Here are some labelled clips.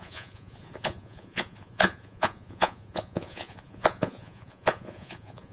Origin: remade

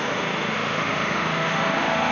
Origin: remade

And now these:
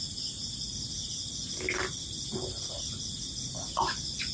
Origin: recorded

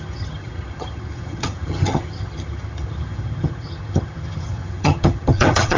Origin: remade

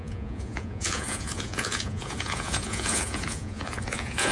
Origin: remade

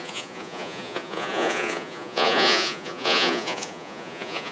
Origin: remade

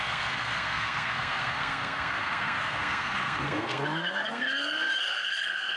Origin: remade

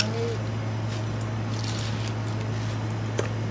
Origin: recorded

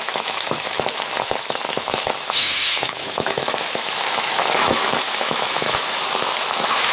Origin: remade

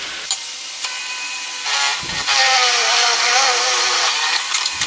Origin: remade